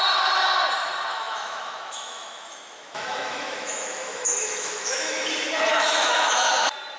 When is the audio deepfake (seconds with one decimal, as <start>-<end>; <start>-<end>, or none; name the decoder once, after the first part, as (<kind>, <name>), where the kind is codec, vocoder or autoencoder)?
1.1-5.3 (autoencoder, DAC-VAE); 5.7-6.5